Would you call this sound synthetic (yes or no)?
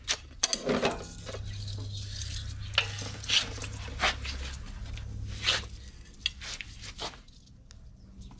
no